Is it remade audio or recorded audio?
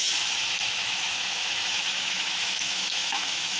remade